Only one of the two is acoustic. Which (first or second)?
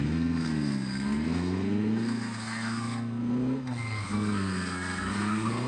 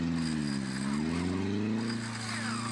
second